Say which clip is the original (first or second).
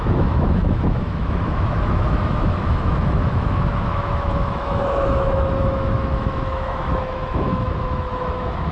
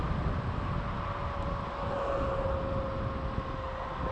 second